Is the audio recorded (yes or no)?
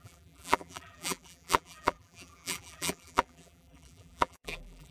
no